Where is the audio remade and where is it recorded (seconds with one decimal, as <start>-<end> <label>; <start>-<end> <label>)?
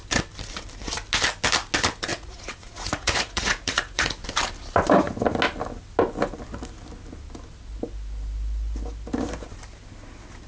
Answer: 0.0-2.1 recorded; 2.1-4.2 remade; 4.2-10.5 recorded